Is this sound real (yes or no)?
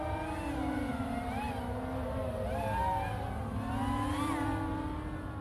yes